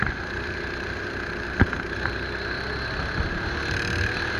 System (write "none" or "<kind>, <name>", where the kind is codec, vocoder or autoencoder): none